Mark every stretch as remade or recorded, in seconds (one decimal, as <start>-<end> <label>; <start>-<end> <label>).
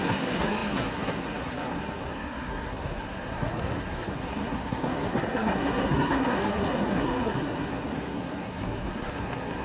0.0-9.6 remade